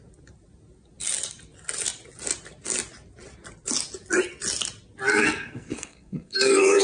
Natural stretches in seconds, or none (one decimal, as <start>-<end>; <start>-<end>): 0.0-5.1

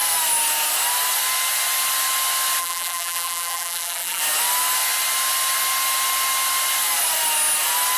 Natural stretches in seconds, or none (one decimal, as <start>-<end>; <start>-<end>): 0.0-2.6; 4.2-8.0